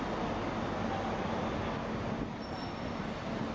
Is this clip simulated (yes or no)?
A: no